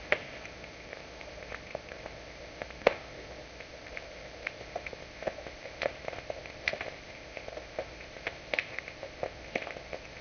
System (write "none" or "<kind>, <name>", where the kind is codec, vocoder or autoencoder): codec, ZipCodec